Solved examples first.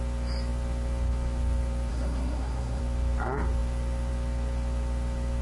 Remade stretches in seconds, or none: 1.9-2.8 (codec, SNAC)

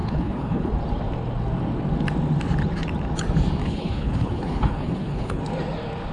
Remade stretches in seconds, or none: 0.0-0.7 (codec, HILCodec); 3.6-5.4

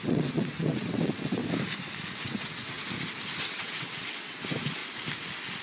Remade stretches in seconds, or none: 0.0-1.4 (vocoder, WaveNeXt); 2.2-2.8; 3.4-4.8

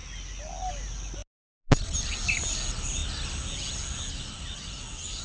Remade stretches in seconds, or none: none

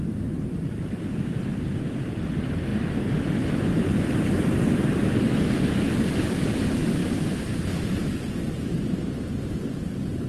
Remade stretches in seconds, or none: 0.0-10.3 (vocoder, BigVGAN v2)